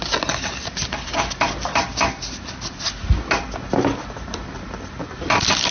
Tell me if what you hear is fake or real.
real